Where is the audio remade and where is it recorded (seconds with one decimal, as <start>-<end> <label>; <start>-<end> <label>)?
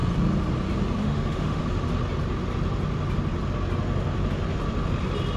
0.0-1.0 recorded; 1.0-1.6 remade; 1.6-5.4 recorded